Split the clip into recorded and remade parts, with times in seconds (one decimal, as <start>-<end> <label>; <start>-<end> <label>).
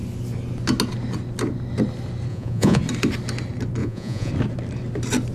0.0-2.3 recorded; 2.3-2.8 remade; 2.8-3.8 recorded; 3.8-4.3 remade; 4.3-5.3 recorded